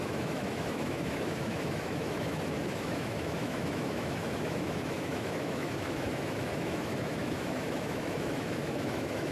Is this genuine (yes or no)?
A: no